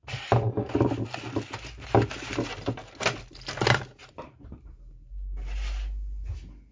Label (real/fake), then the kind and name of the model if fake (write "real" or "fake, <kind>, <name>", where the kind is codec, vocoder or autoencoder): real